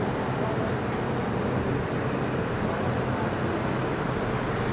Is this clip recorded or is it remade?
recorded